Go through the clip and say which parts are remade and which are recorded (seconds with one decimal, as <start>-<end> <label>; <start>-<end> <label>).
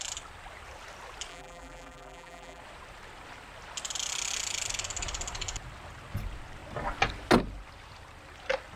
0.0-1.3 recorded; 1.3-2.6 remade; 2.6-8.8 recorded